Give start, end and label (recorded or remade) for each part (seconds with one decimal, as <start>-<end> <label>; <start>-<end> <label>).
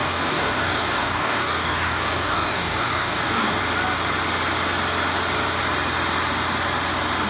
0.0-3.6 remade; 3.6-7.3 recorded